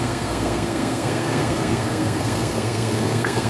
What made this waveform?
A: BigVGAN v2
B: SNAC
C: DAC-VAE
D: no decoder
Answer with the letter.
B